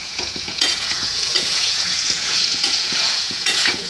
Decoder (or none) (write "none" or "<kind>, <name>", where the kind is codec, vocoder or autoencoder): vocoder, Vocos